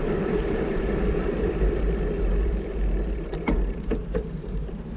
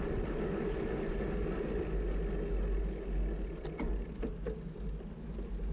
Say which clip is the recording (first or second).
second